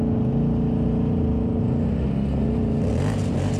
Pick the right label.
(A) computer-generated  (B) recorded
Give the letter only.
B